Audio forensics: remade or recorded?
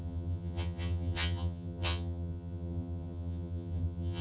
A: remade